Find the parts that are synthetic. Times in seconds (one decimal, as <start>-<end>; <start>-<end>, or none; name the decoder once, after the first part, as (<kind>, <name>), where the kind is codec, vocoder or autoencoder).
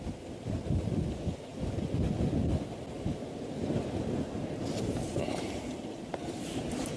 none